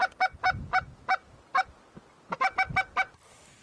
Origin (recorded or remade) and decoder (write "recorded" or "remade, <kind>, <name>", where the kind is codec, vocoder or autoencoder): recorded